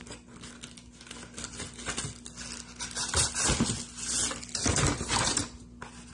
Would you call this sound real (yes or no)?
yes